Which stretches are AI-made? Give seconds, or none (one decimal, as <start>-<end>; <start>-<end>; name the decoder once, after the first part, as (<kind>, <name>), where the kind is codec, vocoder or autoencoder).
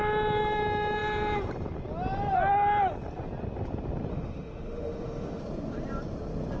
4.1-5.4 (autoencoder, DAC-VAE)